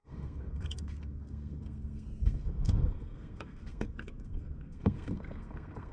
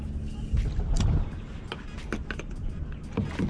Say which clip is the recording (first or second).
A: second